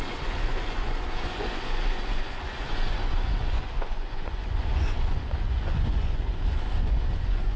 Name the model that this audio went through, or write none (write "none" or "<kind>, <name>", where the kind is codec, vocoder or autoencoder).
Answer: vocoder, Vocos